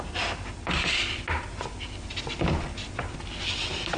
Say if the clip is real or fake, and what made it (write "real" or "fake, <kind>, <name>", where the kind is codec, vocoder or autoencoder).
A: real